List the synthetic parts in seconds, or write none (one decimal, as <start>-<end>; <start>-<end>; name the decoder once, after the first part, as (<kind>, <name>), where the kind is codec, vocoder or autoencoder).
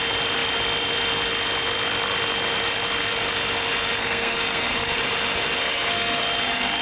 4.0-5.0 (codec, SNAC); 5.6-6.2